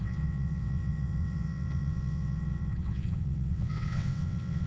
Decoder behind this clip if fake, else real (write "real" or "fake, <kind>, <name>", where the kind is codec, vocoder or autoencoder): fake, vocoder, WaveNeXt